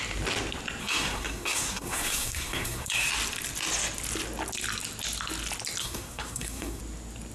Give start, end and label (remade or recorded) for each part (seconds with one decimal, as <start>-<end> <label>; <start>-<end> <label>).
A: 0.0-0.8 recorded; 0.8-3.1 remade; 3.1-5.8 recorded; 5.8-6.8 remade; 6.8-7.3 recorded